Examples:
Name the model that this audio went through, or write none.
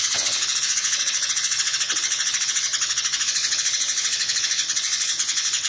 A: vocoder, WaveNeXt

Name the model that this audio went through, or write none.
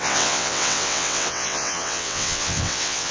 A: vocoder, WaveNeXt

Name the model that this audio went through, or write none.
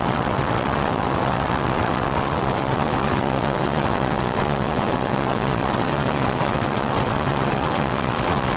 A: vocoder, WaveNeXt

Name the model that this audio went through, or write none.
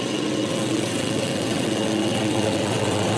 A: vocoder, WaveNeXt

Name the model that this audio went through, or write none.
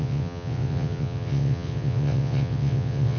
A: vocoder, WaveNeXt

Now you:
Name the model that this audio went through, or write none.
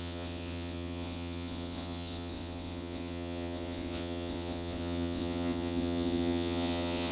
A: vocoder, WaveNeXt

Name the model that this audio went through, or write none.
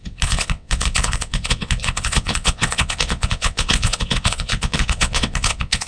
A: vocoder, WaveNeXt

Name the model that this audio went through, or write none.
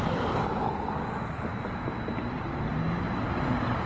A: none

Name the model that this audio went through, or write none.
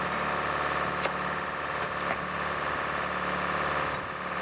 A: none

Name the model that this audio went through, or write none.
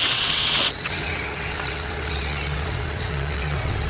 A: vocoder, WaveNeXt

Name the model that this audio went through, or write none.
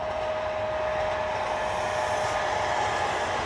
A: none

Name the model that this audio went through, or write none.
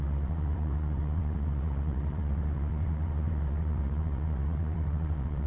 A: vocoder, WaveNeXt